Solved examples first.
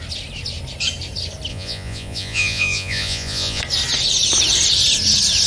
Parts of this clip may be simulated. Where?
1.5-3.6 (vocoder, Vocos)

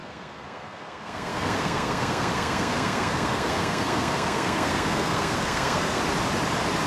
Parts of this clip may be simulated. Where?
0.0-6.0 (codec, SNAC)

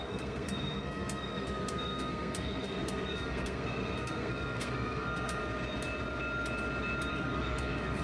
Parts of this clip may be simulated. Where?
0.0-5.4 (codec, SNAC); 7.1-8.0

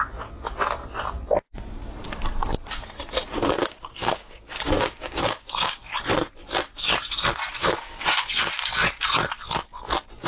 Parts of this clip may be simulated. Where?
3.6-5.8 (codec, DAC); 7.6-8.3

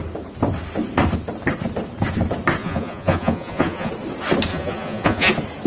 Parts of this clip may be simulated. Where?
2.6-3.9 (vocoder, Vocos); 4.5-5.3

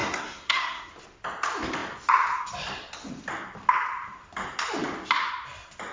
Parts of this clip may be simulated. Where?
0.0-0.9 (codec, SNAC)

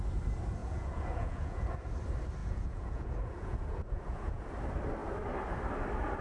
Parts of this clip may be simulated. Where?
0.6-1.7 (vocoder, Vocos); 2.4-4.4